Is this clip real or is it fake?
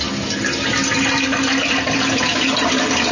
real